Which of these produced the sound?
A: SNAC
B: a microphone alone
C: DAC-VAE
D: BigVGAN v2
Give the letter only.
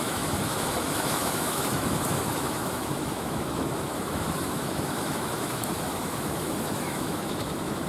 C